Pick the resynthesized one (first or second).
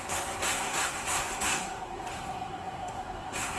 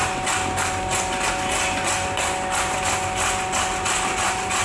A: first